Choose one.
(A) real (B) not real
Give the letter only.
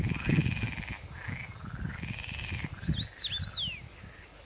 A